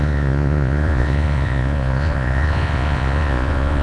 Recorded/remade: remade